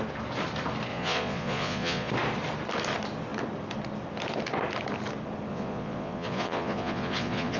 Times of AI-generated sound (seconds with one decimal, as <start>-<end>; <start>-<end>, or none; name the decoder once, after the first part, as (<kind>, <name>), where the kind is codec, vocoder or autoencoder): 0.9-2.1 (vocoder, Vocos); 5.5-7.6